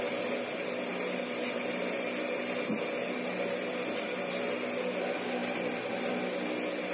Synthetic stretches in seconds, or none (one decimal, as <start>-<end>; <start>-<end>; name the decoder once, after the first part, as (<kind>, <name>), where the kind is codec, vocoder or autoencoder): none

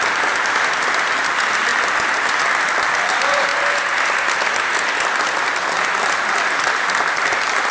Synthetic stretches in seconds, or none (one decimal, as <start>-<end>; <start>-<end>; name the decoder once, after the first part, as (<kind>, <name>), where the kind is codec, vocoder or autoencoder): 1.7-2.4 (vocoder, BigVGAN v2)

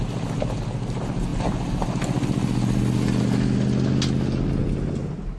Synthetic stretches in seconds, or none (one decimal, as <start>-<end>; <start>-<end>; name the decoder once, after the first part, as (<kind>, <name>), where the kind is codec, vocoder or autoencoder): none

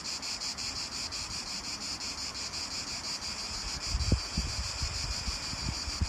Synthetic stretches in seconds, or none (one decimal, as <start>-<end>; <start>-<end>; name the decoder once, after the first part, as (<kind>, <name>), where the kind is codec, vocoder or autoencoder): 0.0-1.9 (vocoder, BigVGAN v2); 4.7-6.1

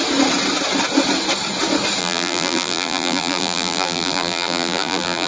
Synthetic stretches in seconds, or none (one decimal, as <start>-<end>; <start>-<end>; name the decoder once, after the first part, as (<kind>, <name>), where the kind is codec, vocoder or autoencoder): 2.0-5.3 (vocoder, BigVGAN v2)

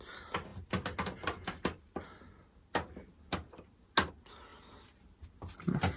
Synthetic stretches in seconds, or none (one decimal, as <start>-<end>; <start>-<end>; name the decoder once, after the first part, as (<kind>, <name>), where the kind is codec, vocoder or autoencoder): none

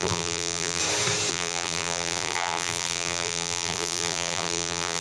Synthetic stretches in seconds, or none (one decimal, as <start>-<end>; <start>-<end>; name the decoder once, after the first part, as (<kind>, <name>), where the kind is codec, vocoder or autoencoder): 0.0-0.8 (vocoder, BigVGAN v2); 1.3-5.0